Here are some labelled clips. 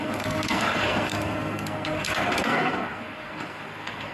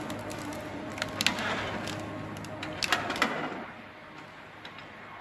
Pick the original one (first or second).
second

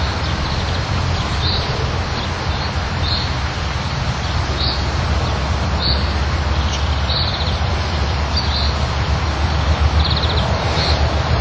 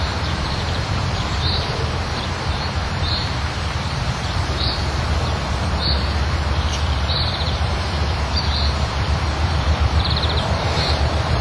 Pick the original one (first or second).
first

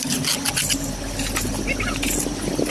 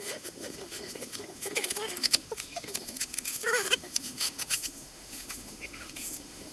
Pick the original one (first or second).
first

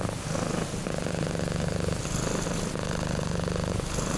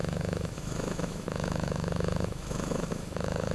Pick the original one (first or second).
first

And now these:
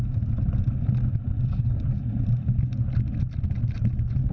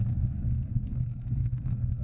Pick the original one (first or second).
first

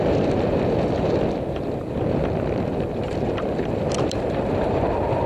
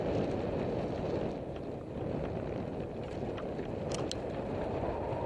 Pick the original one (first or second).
second